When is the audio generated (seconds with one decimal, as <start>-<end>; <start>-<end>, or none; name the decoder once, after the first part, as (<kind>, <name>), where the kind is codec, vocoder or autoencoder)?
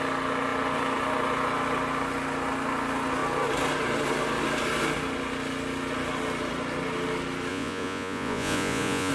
7.5-9.1 (vocoder, Vocos)